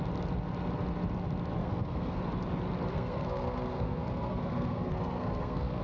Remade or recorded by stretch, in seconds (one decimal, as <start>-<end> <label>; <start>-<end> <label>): 0.0-1.6 recorded; 1.6-2.2 remade; 2.2-2.9 recorded; 2.9-5.8 remade